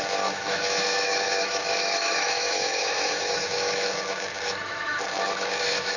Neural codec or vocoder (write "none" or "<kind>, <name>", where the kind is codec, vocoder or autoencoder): autoencoder, DAC-VAE